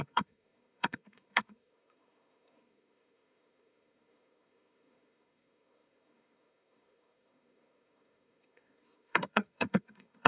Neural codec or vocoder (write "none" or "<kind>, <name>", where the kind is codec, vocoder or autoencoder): codec, SNAC